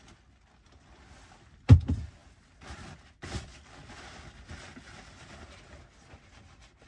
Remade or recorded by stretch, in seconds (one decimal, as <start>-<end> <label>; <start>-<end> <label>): 0.0-6.9 recorded